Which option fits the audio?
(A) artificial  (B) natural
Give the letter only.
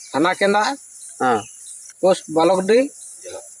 A